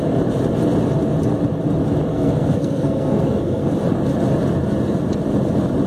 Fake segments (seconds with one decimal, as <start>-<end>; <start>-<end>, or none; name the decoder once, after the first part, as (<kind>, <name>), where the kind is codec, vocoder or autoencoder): 2.1-3.7 (codec, SNAC)